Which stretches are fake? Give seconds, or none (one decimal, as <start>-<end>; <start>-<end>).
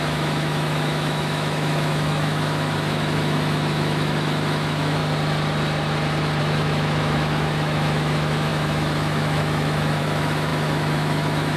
0.0-5.0; 6.4-11.6